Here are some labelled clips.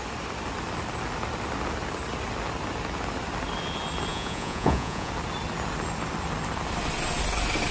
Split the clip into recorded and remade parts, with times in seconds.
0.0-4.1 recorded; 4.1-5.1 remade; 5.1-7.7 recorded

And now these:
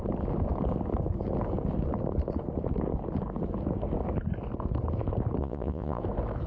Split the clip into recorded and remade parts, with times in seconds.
0.0-5.4 recorded; 5.4-6.0 remade; 6.0-6.5 recorded